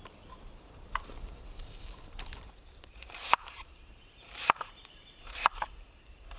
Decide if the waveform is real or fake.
fake